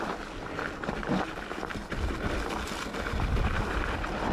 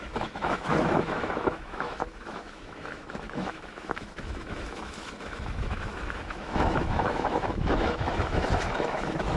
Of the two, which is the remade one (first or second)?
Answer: second